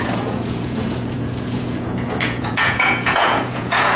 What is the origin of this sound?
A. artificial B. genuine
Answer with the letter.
A